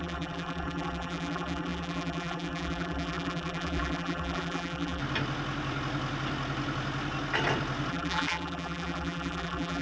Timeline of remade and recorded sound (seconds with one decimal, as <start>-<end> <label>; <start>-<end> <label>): 0.0-5.0 remade; 5.0-7.9 recorded; 7.9-9.8 remade